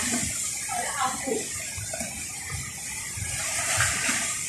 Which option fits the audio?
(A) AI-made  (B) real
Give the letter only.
B